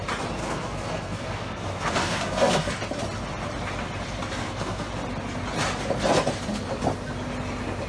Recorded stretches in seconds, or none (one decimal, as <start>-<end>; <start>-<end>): 0.0-0.4; 2.7-4.4; 4.9-7.9